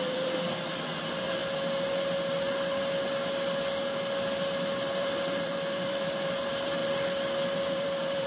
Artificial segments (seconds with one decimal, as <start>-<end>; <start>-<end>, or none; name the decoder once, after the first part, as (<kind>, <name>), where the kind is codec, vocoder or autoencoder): 0.0-1.4 (vocoder, BigVGAN v2); 5.0-6.8; 7.6-8.3